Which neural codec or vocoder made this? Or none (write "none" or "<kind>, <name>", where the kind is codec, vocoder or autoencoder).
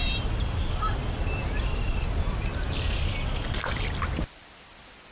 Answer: none